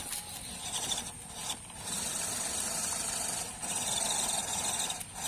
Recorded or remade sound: recorded